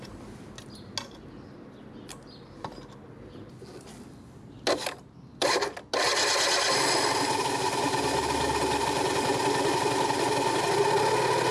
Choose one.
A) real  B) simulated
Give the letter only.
A